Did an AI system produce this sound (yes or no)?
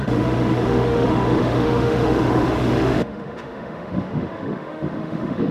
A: yes